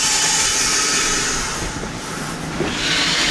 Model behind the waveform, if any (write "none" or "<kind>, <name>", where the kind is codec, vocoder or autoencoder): none